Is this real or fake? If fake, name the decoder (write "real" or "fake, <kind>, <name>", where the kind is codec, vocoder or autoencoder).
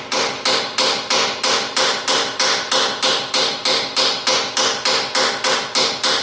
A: real